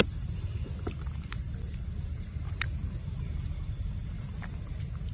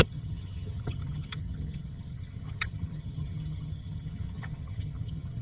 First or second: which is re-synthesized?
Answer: second